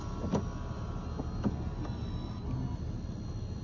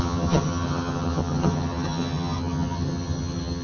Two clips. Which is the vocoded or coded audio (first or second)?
second